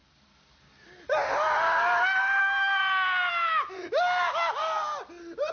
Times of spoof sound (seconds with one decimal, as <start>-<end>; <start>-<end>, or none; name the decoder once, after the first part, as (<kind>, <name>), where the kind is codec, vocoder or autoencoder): 2.4-2.8 (autoencoder, DAC-VAE); 3.3-4.6